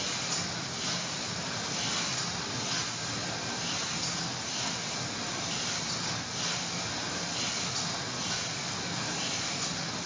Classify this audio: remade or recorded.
recorded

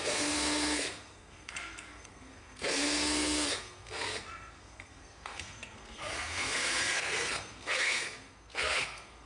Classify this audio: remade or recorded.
remade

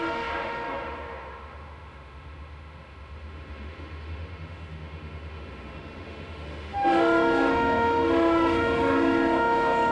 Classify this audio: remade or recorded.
remade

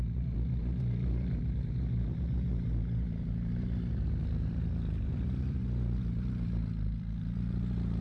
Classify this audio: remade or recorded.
remade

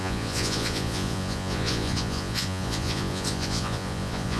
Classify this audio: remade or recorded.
remade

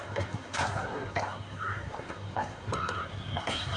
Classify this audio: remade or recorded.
remade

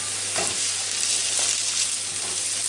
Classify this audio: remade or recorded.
recorded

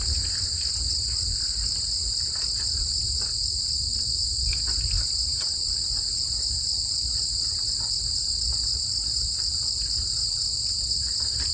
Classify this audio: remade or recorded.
recorded